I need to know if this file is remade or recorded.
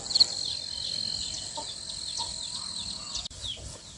recorded